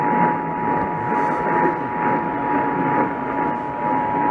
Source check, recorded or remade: recorded